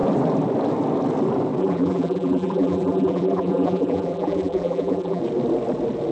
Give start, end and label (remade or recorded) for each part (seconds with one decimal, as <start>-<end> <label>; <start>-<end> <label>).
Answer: 0.0-1.6 recorded; 1.6-5.2 remade; 5.2-6.1 recorded